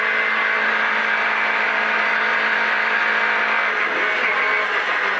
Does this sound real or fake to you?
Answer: real